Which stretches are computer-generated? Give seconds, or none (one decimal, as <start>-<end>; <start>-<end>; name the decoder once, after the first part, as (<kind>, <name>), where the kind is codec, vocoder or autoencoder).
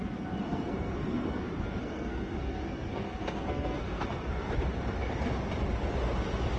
0.4-1.4 (codec, SNAC); 1.8-4.5